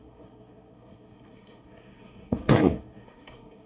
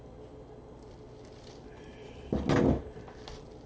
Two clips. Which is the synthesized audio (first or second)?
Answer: first